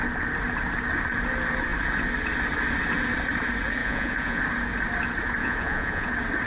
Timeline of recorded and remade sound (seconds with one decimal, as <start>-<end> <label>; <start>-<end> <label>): 0.0-3.8 recorded; 3.8-4.4 remade; 4.4-5.4 recorded; 5.4-6.1 remade; 6.1-6.5 recorded